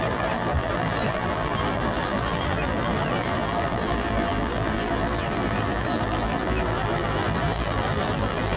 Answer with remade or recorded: remade